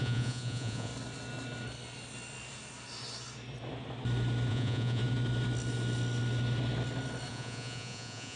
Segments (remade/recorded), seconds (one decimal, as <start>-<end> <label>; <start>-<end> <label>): 0.0-0.9 remade; 0.9-4.5 recorded; 4.5-5.0 remade; 5.0-7.3 recorded; 7.3-8.4 remade